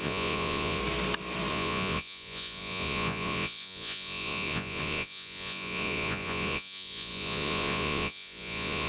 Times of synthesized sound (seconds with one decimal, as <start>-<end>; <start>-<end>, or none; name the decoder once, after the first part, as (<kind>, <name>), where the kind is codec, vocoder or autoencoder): 0.0-0.8 (vocoder, Vocos); 1.5-8.9